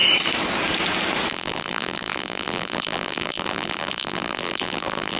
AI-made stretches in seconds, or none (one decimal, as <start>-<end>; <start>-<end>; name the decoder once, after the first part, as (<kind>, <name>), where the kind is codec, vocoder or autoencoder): 1.3-5.2 (vocoder, BigVGAN v2)